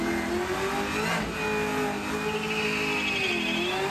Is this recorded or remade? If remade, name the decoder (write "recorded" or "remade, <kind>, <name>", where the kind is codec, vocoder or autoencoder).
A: recorded